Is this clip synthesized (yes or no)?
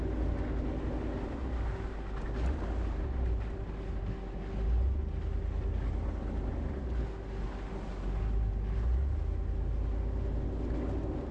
no